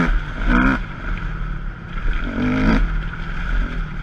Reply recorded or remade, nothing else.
recorded